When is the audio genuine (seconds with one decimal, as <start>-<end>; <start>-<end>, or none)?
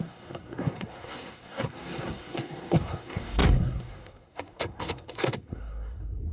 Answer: none